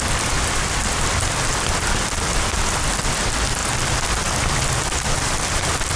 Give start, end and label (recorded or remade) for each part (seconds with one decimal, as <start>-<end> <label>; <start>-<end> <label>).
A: 0.0-0.8 recorded; 0.8-1.3 remade; 1.3-6.0 recorded